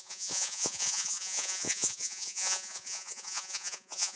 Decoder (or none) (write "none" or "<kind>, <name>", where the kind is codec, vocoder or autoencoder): vocoder, Vocos